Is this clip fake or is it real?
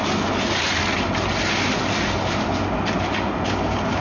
real